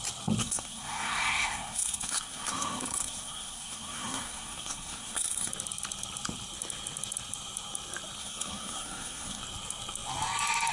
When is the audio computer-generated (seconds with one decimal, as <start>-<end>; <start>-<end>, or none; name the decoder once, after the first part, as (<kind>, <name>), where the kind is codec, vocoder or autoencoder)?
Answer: 0.4-5.5 (codec, SNAC); 8.2-9.4